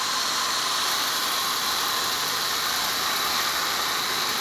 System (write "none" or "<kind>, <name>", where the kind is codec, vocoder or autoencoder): none